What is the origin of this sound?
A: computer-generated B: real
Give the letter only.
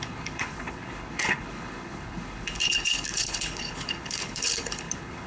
A